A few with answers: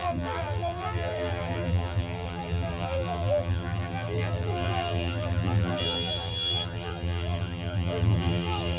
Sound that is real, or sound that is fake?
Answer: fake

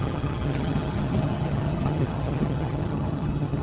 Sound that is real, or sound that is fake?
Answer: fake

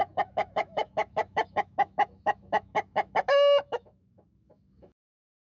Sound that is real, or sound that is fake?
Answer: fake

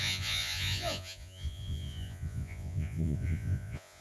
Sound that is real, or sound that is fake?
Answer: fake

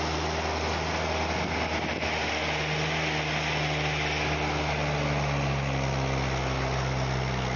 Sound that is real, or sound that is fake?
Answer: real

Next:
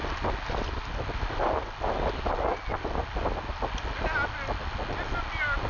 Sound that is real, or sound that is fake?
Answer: real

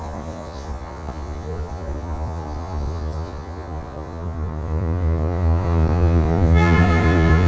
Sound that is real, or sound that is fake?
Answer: fake